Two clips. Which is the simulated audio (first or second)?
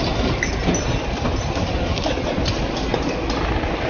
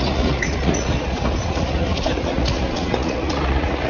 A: second